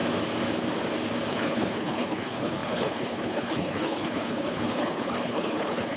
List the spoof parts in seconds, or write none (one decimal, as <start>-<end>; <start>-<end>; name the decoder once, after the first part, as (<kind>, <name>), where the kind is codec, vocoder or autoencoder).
1.3-6.0 (codec, HILCodec)